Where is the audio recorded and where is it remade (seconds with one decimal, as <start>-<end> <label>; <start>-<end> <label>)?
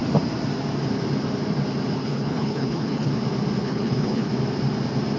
0.0-2.0 recorded; 2.0-3.1 remade; 3.1-3.6 recorded; 3.6-4.3 remade; 4.3-5.2 recorded